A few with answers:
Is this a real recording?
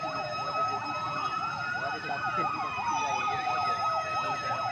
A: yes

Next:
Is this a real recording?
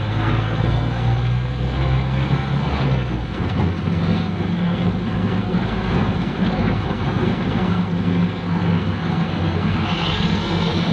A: no